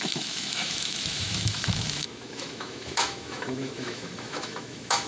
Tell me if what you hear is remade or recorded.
remade